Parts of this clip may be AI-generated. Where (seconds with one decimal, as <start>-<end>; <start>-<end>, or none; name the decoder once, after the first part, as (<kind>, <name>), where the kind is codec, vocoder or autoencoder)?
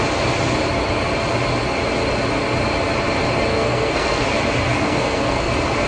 3.5-4.2 (codec, SNAC); 4.7-5.5